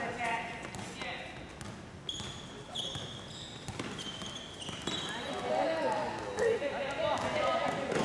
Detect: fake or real real